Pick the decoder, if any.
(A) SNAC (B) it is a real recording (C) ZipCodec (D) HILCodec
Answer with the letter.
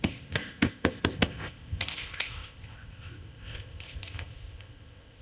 C